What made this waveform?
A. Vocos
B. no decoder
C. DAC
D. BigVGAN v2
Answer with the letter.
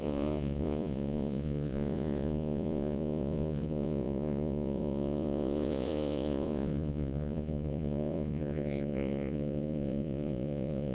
A